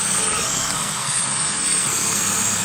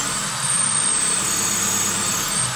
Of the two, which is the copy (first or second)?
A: first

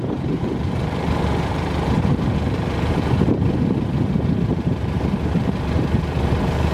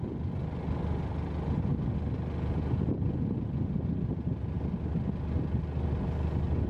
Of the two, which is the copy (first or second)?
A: first